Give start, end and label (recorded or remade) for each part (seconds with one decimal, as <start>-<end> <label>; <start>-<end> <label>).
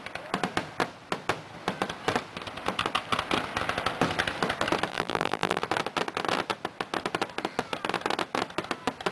0.0-4.9 recorded; 4.9-5.6 remade; 5.6-9.1 recorded